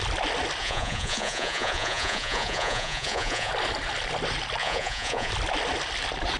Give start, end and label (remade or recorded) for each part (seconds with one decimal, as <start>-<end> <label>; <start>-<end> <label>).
0.0-0.6 recorded; 0.6-3.5 remade; 3.5-4.6 recorded; 4.6-5.3 remade; 5.3-6.4 recorded